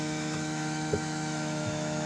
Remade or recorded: remade